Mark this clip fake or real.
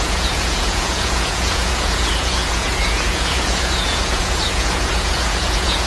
fake